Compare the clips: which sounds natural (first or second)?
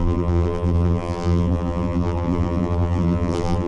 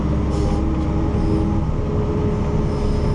second